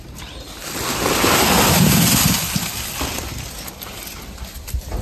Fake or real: real